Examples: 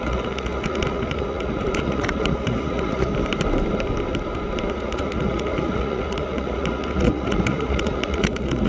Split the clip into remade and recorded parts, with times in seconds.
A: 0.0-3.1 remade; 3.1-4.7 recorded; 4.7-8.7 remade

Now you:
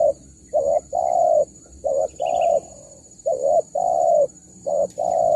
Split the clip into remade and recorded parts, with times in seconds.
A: 0.0-5.4 remade

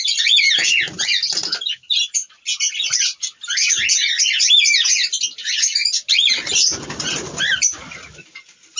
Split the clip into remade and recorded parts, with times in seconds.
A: 0.0-8.8 recorded

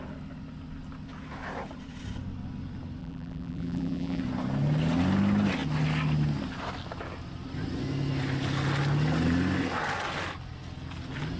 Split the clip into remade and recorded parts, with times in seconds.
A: 0.0-3.0 recorded; 3.0-4.2 remade; 4.2-11.4 recorded